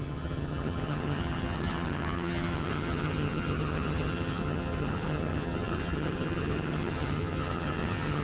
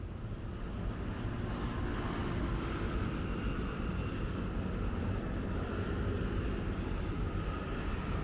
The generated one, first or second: first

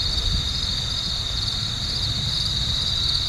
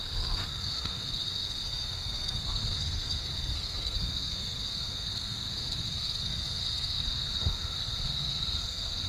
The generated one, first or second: second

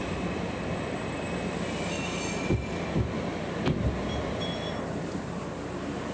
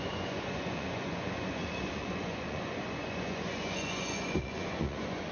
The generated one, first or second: second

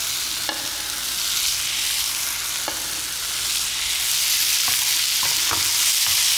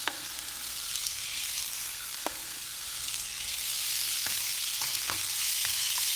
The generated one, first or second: second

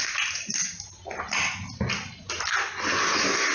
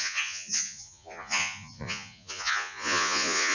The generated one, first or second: second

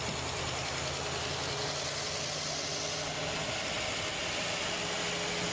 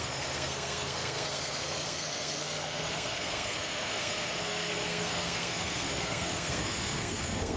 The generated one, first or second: second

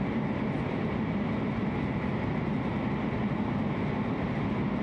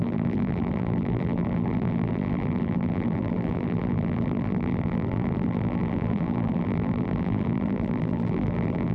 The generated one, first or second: second